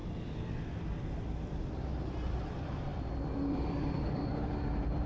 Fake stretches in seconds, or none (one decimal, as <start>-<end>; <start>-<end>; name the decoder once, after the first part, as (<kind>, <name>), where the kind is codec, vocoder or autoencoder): 0.0-5.1 (vocoder, BigVGAN v2)